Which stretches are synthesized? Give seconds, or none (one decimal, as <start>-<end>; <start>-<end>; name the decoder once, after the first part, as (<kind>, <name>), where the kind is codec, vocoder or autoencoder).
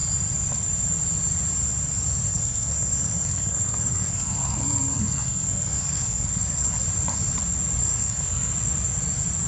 2.3-6.7 (codec, SNAC); 7.8-8.5